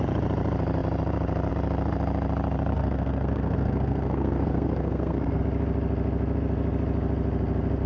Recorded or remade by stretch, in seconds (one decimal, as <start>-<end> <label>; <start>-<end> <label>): 0.0-2.7 recorded; 2.7-5.4 remade; 5.4-7.9 recorded